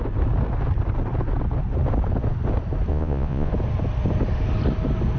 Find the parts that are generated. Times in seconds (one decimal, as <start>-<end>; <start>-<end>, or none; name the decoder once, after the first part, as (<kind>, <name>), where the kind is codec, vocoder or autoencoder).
2.9-3.5 (vocoder, Vocos)